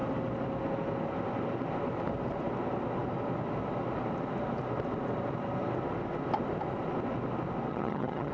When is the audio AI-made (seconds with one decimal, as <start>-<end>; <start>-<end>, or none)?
7.7-8.3